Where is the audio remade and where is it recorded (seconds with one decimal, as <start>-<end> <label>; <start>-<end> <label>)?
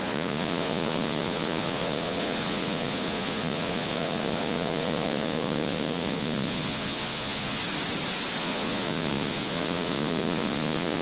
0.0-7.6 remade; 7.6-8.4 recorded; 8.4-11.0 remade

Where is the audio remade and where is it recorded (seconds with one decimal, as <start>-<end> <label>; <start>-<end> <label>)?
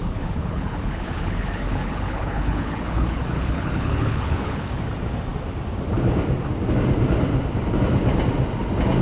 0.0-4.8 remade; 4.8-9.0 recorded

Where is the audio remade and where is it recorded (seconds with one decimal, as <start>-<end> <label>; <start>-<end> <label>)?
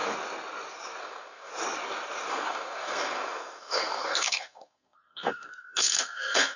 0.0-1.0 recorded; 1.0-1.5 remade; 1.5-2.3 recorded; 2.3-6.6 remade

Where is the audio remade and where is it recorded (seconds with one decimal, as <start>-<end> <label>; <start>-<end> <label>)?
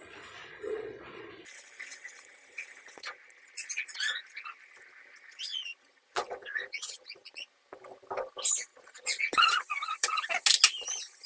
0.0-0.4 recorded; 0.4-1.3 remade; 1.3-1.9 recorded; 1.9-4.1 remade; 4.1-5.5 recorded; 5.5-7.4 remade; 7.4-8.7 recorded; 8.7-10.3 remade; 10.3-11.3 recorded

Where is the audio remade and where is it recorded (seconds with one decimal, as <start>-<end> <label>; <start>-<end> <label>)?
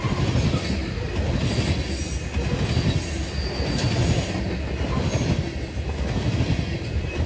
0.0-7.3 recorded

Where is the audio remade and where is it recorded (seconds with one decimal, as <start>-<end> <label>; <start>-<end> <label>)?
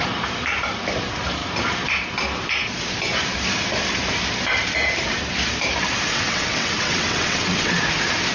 0.0-6.1 recorded; 6.1-7.9 remade; 7.9-8.3 recorded